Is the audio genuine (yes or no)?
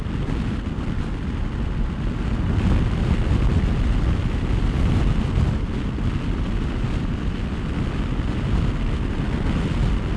yes